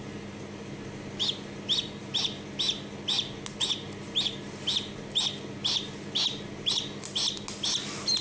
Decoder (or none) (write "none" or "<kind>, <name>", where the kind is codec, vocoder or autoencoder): none